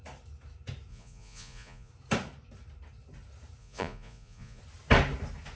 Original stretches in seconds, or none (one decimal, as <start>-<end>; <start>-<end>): 0.0-0.9; 1.9-3.6; 4.6-5.6